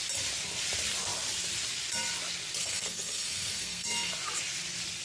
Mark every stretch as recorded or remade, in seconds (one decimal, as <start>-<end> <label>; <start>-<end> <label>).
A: 0.0-2.6 recorded; 2.6-4.1 remade; 4.1-5.0 recorded